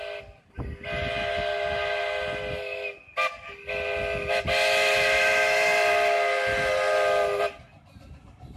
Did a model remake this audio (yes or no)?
no